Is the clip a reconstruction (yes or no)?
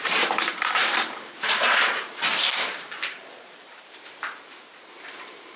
yes